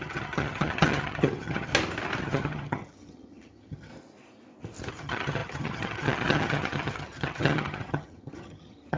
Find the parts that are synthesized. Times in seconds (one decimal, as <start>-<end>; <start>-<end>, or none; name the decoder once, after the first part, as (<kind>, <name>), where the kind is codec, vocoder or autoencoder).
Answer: 0.0-1.7 (vocoder, HiFi-GAN); 2.2-3.9; 4.9-9.0